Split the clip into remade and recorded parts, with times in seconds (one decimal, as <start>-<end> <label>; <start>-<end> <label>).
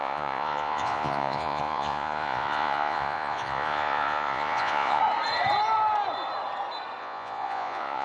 0.0-5.0 remade; 5.0-7.0 recorded; 7.0-8.0 remade